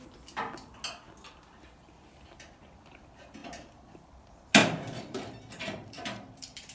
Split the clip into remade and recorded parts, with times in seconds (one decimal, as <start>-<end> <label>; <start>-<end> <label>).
0.0-4.6 recorded; 4.6-6.7 remade